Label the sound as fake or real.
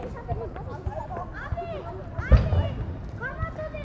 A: real